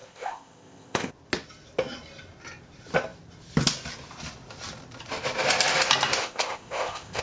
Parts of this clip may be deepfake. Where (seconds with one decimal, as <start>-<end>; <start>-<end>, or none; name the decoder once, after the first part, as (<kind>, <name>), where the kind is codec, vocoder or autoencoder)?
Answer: 0.0-1.1 (codec, ZipCodec); 6.2-7.2